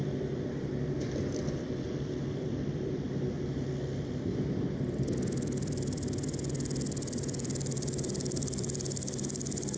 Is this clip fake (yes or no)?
yes